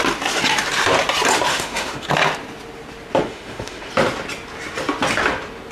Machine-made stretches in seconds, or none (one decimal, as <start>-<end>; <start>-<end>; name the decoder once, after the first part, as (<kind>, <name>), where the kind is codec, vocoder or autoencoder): 1.5-2.1 (autoencoder, DAC-VAE); 3.2-3.9